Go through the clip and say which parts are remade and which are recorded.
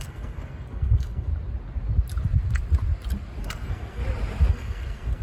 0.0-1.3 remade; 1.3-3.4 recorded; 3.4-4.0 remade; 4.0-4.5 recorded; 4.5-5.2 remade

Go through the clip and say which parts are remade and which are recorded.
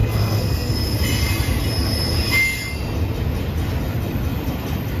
0.0-0.7 remade; 0.7-5.0 recorded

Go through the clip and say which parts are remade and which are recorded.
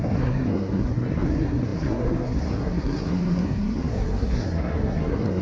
0.0-5.4 remade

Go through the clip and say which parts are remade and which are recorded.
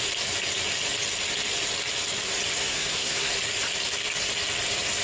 0.0-2.6 recorded; 2.6-3.3 remade; 3.3-5.0 recorded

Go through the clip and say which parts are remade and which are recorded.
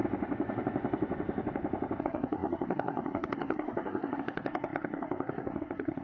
0.0-2.0 recorded; 2.0-6.0 remade